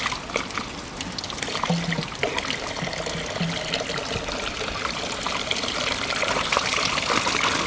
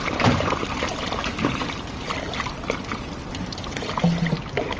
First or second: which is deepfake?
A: second